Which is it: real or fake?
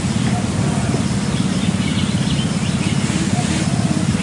real